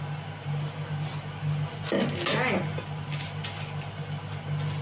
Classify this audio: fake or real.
real